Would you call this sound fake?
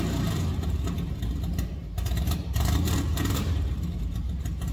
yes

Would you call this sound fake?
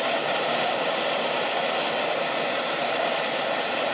yes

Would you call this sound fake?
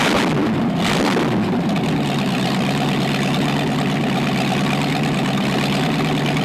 no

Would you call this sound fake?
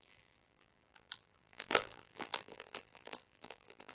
yes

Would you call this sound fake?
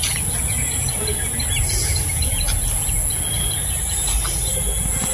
no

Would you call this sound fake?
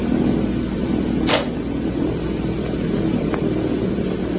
yes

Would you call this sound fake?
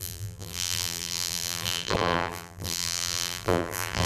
yes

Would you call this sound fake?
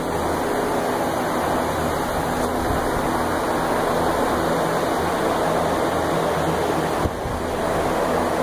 no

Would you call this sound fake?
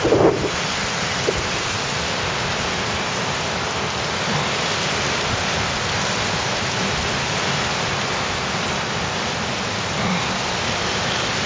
yes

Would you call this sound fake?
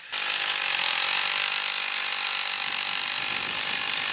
yes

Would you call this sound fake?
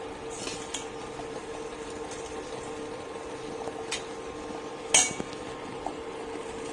no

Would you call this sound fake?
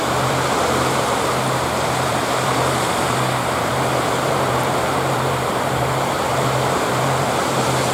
yes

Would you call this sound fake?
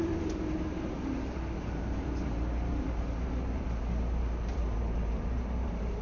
yes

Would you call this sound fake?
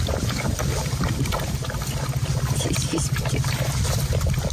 yes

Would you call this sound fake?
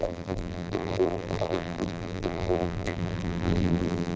yes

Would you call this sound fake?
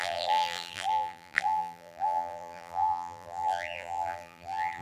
yes